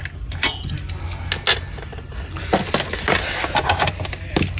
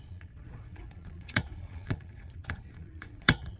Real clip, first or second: first